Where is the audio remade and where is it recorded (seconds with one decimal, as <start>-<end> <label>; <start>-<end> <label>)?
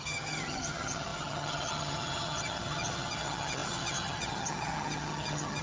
0.0-5.6 remade